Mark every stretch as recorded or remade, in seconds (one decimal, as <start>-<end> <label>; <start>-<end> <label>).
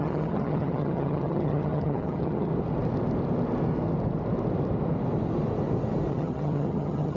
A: 0.0-2.5 remade; 2.5-6.1 recorded; 6.1-7.2 remade